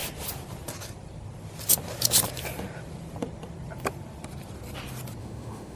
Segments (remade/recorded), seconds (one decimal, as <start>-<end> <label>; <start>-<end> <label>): 0.0-5.2 recorded; 5.2-5.8 remade